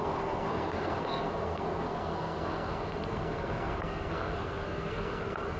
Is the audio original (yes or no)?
no